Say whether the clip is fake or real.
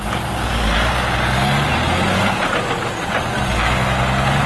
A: real